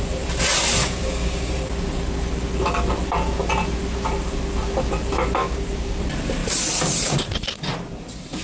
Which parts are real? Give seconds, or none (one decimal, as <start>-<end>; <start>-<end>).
0.0-0.8; 1.5-5.4; 6.0-8.4